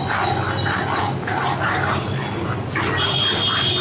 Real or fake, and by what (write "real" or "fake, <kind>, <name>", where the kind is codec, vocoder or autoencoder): real